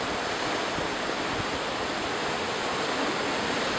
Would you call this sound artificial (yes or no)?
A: no